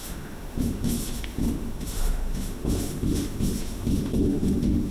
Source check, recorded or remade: remade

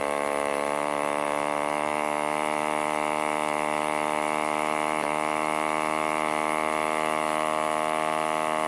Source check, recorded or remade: remade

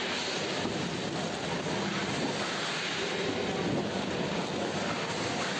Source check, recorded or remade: recorded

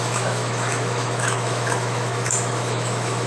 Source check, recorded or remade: remade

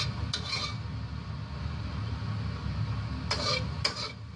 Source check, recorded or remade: recorded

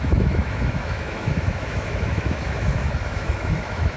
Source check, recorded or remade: remade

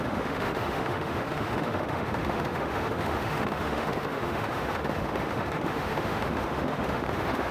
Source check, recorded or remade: remade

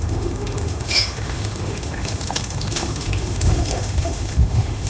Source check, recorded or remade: remade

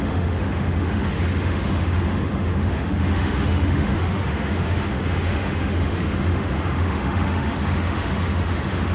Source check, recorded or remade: remade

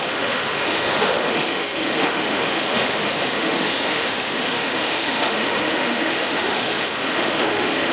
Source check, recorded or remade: remade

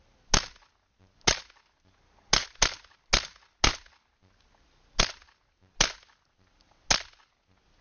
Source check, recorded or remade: recorded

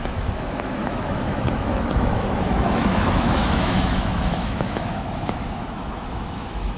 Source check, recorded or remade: remade